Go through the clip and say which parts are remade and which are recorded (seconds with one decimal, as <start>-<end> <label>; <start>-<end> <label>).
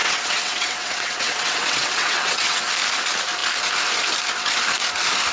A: 0.0-2.6 remade; 2.6-5.3 recorded